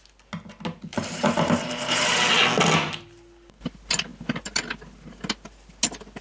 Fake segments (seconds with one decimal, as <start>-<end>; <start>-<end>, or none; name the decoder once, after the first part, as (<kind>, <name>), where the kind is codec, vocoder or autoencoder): 0.9-2.1 (vocoder, BigVGAN v2)